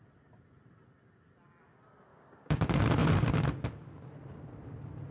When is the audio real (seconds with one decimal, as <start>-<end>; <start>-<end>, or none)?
0.0-2.1; 2.6-5.1

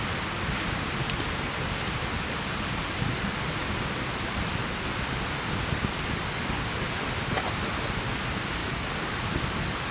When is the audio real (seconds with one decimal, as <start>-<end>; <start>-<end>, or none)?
0.0-8.6; 9.3-9.9

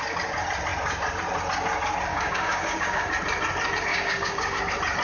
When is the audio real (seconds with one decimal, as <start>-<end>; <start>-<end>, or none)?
0.0-2.1; 3.0-3.9; 4.6-5.0